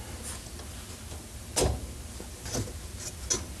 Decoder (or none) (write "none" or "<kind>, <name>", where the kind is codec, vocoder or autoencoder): none